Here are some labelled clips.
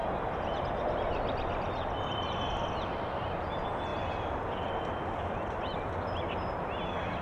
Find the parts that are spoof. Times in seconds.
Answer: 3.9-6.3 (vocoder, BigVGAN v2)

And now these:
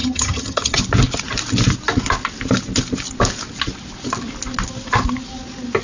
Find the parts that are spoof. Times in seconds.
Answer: 0.0-0.8 (vocoder, HiFi-GAN)

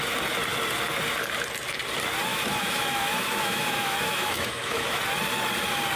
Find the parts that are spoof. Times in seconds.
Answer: 2.3-5.0 (autoencoder, DAC-VAE)

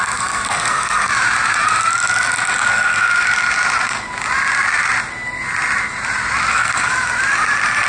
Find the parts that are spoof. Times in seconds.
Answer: 0.0-1.1 (codec, SNAC); 2.7-3.1; 6.5-6.9